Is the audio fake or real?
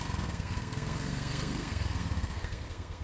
fake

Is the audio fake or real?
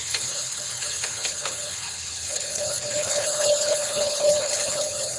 fake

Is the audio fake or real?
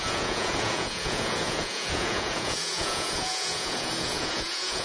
fake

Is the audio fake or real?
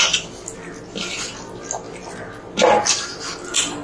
real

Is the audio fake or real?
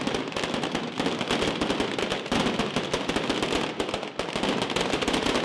real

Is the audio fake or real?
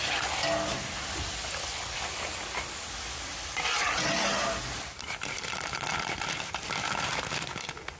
real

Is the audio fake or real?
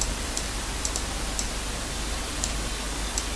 real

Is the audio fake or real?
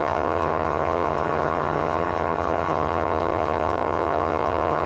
fake